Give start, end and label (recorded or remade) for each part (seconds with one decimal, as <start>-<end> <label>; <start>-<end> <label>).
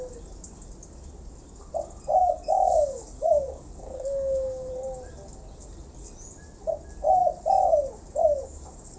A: 0.0-2.2 recorded; 2.2-4.7 remade; 4.7-9.0 recorded